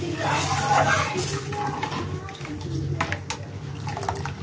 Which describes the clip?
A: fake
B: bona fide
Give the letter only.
B